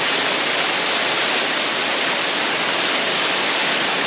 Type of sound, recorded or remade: recorded